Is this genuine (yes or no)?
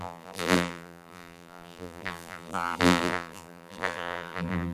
no